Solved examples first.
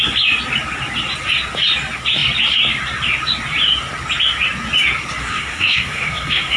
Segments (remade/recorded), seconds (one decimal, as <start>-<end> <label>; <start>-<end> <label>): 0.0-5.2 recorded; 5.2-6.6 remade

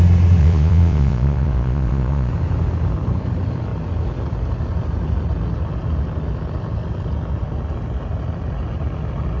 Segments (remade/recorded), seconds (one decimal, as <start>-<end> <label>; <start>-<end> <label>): 0.0-0.4 recorded; 0.4-2.3 remade; 2.3-9.4 recorded

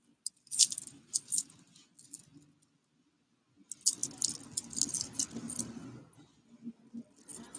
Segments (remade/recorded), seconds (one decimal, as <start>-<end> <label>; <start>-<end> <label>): 0.0-7.6 recorded

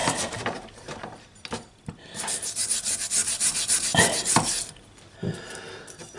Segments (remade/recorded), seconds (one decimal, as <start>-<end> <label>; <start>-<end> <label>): 0.0-1.0 remade; 1.0-6.2 recorded

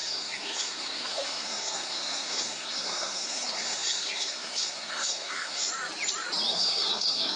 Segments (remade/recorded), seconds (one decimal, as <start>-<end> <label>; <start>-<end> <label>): 0.0-5.7 remade; 5.7-6.5 recorded; 6.5-7.4 remade

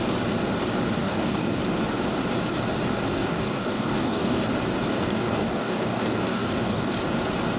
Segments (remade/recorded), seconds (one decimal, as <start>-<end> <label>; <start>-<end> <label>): 0.0-1.0 recorded; 1.0-1.6 remade; 1.6-3.1 recorded; 3.1-4.4 remade; 4.4-4.9 recorded; 4.9-6.9 remade; 6.9-7.6 recorded